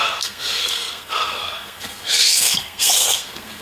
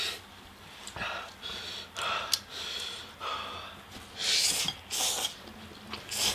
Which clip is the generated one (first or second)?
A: first